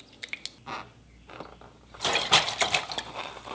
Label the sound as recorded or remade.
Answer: recorded